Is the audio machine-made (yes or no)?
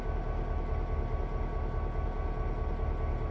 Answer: no